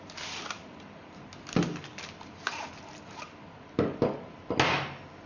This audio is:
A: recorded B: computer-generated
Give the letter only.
A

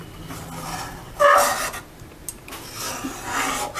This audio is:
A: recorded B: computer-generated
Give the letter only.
A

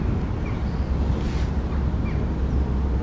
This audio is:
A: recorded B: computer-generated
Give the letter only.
A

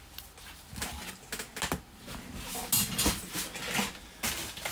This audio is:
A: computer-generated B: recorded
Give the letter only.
B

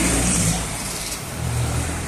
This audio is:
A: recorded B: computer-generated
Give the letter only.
B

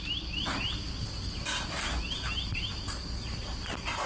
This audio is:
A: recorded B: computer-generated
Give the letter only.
A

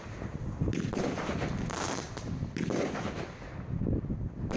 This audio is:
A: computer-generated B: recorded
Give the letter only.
B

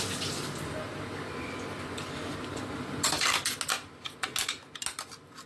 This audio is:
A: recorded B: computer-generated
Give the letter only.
A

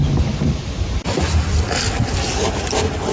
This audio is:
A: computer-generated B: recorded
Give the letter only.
B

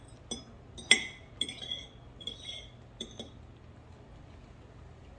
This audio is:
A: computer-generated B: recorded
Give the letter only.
B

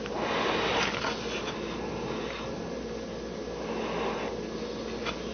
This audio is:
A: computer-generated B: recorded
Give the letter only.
B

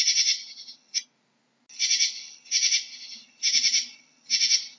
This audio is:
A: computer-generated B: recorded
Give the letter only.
B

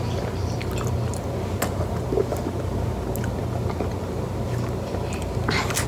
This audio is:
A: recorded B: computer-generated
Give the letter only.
A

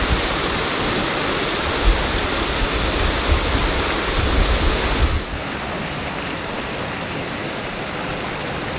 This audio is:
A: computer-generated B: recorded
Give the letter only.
B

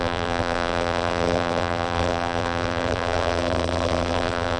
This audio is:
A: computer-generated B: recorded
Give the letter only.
A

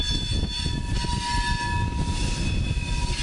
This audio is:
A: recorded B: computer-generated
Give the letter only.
A